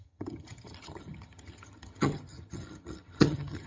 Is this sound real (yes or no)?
no